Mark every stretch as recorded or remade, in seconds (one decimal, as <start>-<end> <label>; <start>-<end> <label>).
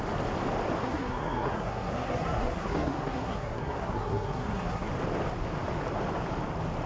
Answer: 0.0-0.8 recorded; 0.8-4.9 remade; 4.9-6.9 recorded